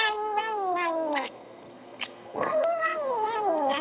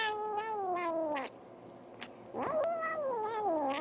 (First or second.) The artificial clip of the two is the first